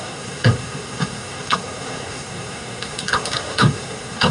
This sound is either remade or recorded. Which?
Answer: remade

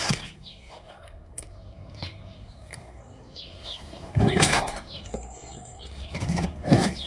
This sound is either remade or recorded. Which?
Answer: remade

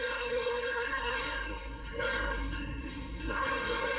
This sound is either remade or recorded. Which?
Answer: remade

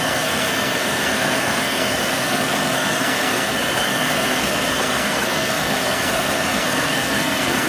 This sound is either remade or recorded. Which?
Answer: remade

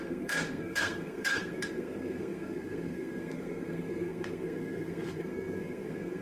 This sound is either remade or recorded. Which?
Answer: remade